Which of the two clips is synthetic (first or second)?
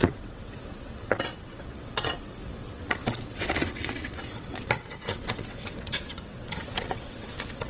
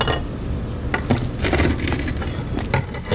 first